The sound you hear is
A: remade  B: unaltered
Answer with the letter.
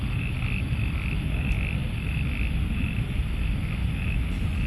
B